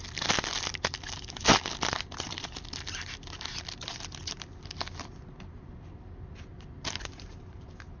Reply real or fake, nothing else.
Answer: real